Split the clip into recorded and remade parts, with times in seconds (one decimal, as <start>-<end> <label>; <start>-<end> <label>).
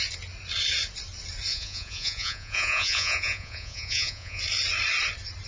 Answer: 0.0-1.5 recorded; 1.5-4.4 remade; 4.4-5.5 recorded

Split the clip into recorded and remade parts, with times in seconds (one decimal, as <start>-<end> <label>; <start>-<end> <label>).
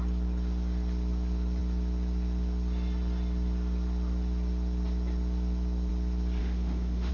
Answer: 0.0-6.4 recorded; 6.4-7.1 remade